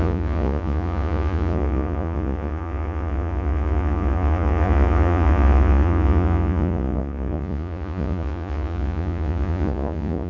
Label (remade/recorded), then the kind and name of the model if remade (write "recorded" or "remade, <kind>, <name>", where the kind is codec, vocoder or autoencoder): remade, vocoder, Vocos